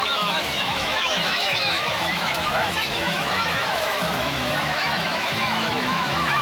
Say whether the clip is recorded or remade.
remade